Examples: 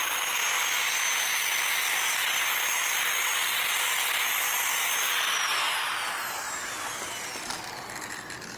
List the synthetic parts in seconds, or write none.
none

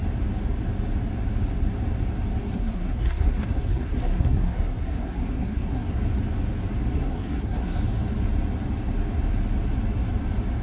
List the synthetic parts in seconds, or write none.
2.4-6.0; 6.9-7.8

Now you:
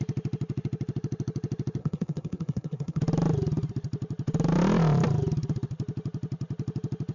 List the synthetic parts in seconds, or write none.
1.8-3.0

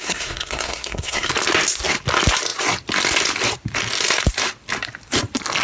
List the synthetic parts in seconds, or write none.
0.0-1.3

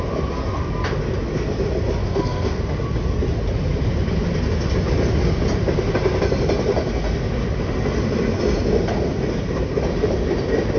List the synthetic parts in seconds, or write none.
2.0-2.6

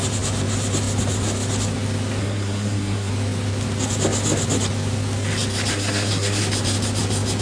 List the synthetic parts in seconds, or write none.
2.2-3.1; 5.7-6.4

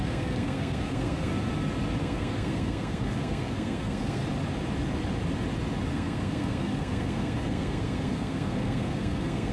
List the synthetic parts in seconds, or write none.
0.0-1.3; 2.0-4.2; 5.9-9.5